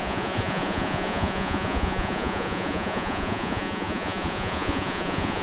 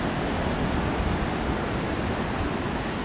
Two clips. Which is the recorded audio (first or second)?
second